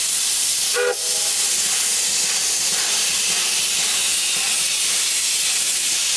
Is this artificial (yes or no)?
no